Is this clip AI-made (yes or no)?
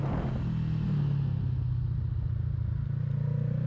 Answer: no